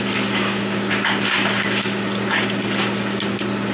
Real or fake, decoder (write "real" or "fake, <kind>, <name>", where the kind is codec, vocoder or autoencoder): real